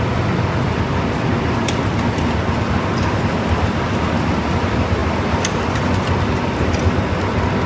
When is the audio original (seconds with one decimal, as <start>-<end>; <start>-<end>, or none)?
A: 0.0-7.7